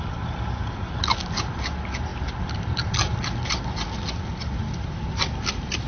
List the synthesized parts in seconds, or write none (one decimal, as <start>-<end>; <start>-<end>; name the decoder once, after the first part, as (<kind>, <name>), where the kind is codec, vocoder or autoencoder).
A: none